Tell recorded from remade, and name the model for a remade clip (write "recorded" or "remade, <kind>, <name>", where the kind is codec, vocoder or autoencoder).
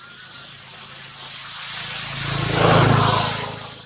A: recorded